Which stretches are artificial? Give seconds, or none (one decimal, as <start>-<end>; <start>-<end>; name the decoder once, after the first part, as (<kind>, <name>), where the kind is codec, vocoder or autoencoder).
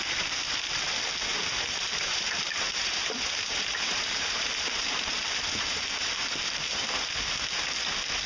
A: 1.3-5.1 (vocoder, BigVGAN v2)